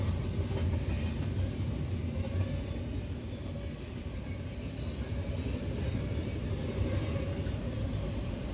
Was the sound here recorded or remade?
recorded